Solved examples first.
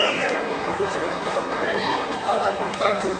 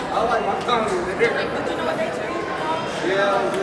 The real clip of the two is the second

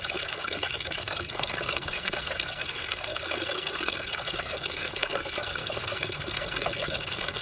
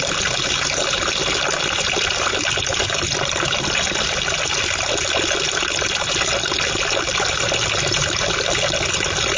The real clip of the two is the second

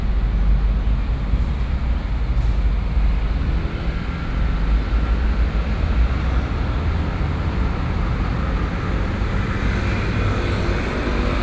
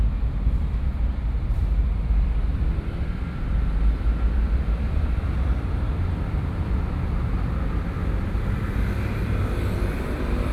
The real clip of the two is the first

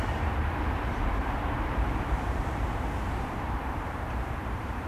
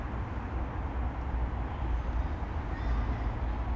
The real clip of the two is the second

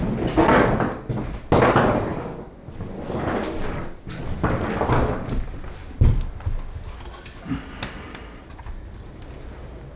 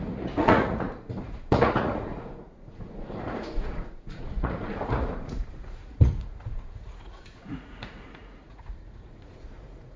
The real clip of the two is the first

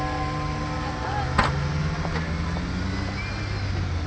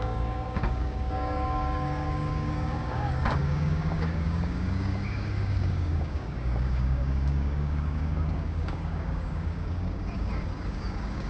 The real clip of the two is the first